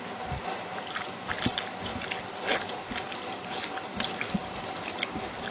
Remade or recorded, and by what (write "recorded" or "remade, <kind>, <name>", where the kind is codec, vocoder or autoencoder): recorded